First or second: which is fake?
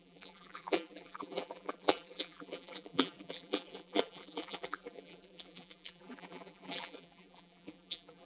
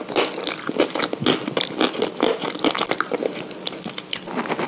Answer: first